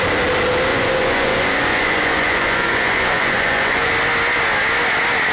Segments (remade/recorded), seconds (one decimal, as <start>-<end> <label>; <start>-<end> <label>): 0.0-0.7 recorded; 0.7-3.9 remade; 3.9-5.3 recorded